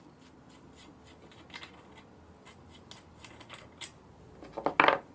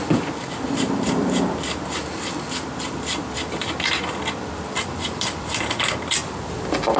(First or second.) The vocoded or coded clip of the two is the second